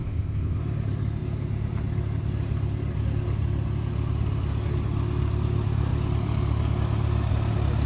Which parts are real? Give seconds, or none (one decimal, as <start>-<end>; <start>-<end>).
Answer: 0.6-7.9